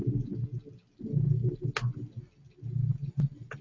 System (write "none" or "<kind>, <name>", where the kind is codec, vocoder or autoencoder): none